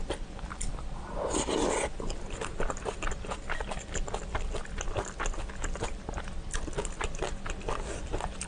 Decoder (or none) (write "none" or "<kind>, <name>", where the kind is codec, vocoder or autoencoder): none